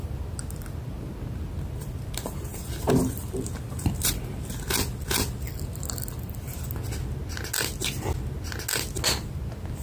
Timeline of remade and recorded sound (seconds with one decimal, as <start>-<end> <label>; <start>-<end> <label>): 0.0-2.5 recorded; 2.5-4.2 remade; 4.2-9.8 recorded